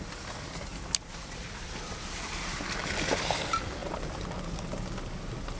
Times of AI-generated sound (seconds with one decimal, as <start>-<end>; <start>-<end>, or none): none